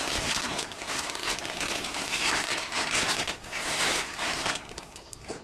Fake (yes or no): yes